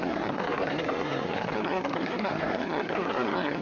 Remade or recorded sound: remade